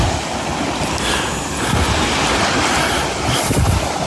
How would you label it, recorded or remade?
recorded